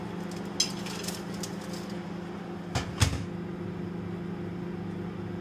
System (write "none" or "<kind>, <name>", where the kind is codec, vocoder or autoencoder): none